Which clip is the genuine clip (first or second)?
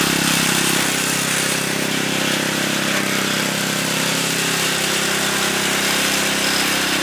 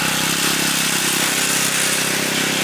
second